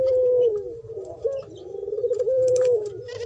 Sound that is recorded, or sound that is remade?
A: remade